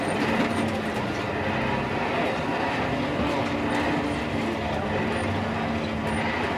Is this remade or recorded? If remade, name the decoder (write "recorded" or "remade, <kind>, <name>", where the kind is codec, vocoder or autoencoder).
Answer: recorded